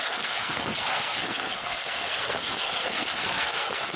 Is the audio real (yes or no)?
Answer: no